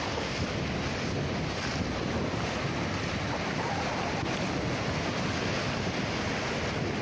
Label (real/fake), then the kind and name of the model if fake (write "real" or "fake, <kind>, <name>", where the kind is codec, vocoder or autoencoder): real